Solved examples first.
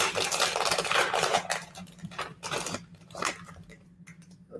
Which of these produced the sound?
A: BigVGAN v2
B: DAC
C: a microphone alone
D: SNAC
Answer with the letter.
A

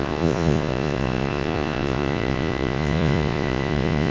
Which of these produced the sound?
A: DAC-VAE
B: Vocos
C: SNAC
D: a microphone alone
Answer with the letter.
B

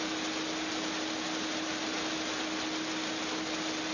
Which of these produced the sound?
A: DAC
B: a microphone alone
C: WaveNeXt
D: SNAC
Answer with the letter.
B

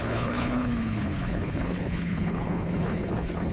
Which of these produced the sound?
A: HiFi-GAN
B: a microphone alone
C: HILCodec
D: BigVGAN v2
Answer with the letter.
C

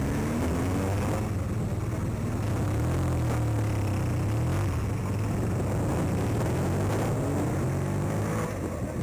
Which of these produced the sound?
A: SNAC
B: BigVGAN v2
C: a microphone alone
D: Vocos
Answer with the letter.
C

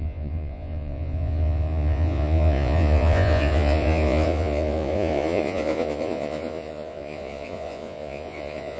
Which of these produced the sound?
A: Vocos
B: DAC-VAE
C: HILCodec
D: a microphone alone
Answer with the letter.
A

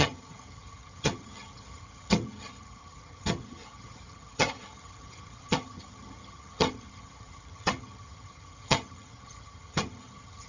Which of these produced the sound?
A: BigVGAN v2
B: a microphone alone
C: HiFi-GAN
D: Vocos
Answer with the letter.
C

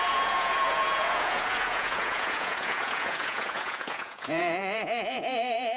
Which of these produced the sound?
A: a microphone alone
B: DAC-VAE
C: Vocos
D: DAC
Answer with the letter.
C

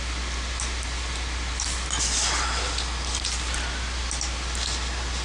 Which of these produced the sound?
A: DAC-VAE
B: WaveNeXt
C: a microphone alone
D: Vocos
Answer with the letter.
C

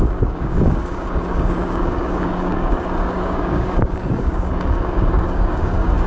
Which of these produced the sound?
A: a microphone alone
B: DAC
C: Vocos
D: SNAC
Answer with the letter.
B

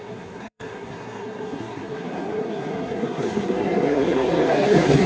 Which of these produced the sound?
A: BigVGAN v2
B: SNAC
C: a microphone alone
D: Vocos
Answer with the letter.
B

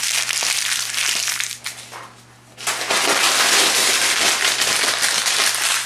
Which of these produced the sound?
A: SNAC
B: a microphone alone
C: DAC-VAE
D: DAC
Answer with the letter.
B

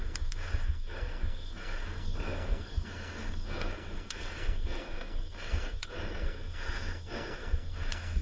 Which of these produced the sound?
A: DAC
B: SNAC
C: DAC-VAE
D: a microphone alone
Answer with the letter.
B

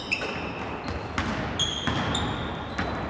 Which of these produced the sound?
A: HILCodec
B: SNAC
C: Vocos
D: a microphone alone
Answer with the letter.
D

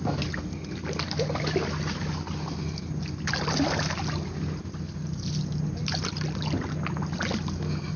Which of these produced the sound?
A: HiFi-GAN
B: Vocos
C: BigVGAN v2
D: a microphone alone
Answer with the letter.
D